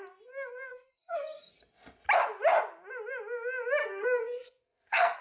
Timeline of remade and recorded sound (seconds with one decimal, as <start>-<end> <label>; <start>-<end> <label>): 0.0-0.7 recorded; 0.7-1.5 remade; 1.5-3.8 recorded; 3.8-5.2 remade